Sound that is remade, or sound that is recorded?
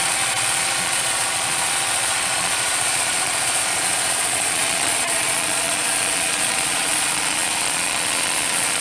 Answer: remade